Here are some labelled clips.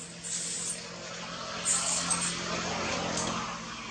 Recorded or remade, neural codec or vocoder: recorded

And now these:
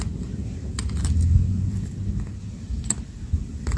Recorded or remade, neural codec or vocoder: recorded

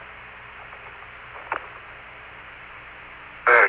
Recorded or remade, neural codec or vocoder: remade, vocoder, BigVGAN v2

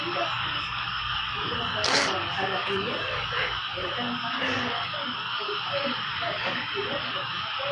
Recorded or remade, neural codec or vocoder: remade, codec, DAC